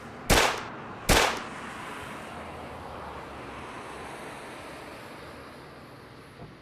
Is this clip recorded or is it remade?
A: recorded